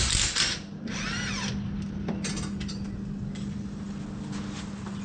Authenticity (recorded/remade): recorded